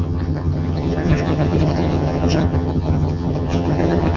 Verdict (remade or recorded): remade